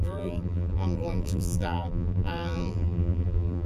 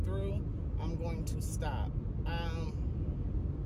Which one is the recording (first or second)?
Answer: second